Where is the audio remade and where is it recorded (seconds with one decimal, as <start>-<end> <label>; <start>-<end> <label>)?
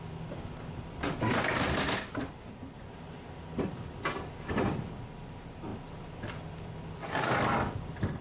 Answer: 0.0-8.2 recorded